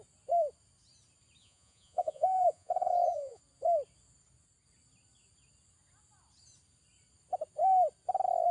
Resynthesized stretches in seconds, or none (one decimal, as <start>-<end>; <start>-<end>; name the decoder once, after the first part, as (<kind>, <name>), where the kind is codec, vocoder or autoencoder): 1.4-3.4 (vocoder, Vocos)